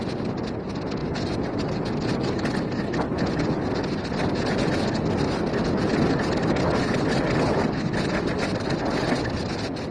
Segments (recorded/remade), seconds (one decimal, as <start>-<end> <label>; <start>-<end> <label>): 0.0-9.9 recorded